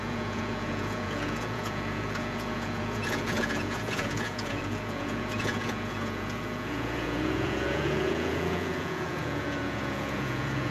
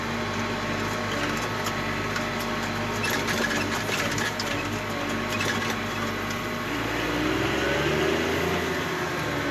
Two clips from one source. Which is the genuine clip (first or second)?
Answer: second